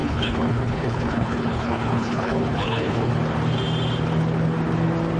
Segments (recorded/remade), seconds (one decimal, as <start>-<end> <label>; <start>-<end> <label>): 0.0-3.1 remade; 3.1-5.2 recorded